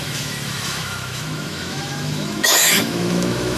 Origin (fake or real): fake